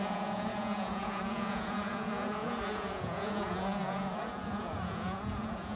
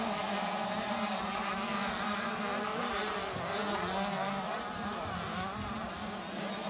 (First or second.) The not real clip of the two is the first